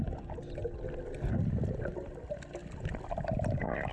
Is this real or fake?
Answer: real